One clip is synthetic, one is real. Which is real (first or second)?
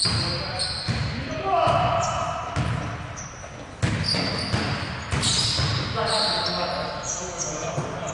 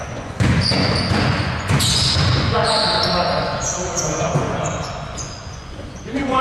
first